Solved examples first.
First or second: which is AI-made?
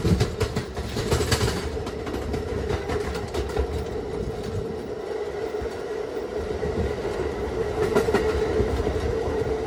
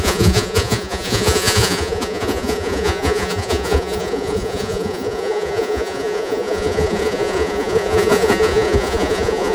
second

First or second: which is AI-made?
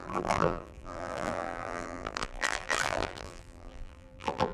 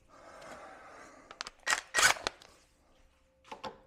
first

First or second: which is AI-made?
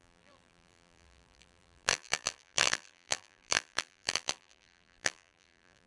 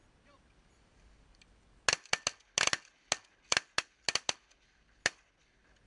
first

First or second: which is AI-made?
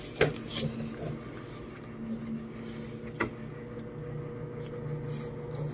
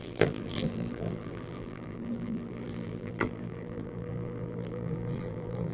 second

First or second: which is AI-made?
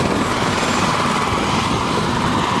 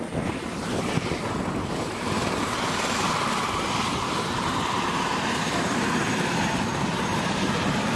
second